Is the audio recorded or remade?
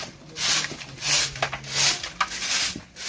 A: recorded